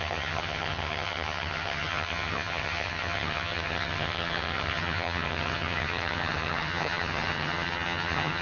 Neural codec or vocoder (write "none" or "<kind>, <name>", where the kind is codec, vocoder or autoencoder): vocoder, HiFi-GAN